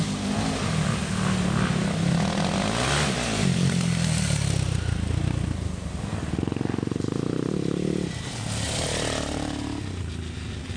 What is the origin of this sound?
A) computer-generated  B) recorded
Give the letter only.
B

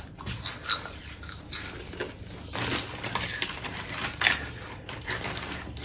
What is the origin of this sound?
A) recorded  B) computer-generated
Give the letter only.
A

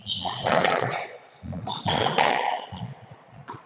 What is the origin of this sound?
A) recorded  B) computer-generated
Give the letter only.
B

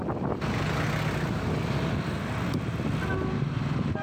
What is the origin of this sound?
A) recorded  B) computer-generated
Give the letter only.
A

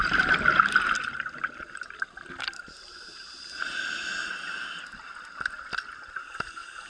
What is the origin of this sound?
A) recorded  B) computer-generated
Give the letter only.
A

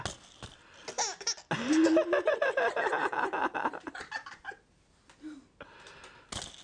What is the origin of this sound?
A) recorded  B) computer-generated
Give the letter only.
A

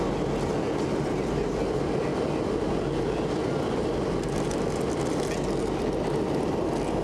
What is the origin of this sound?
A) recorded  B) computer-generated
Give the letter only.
A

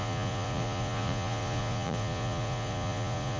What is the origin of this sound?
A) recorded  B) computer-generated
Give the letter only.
B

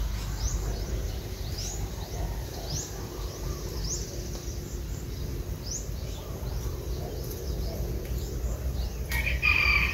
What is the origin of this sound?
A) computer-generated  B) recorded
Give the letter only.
B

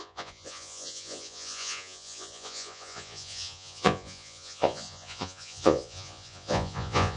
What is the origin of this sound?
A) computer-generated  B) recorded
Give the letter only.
A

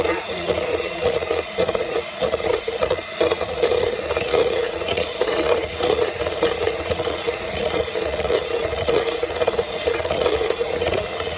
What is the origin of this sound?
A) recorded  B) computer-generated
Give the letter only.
B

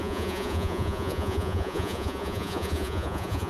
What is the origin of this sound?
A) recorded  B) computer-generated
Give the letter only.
B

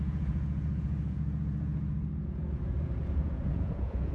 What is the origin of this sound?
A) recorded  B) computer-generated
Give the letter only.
B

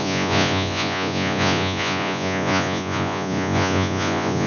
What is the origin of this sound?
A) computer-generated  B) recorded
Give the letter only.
A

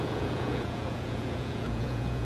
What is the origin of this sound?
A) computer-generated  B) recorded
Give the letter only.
A